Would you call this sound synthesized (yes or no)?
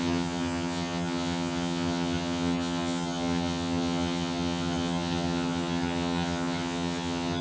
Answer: yes